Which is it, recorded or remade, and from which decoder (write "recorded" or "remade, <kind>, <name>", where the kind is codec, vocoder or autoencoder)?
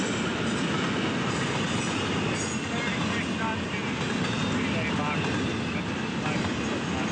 recorded